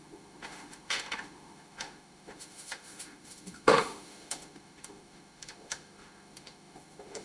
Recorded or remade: remade